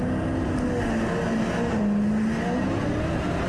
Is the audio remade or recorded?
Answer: recorded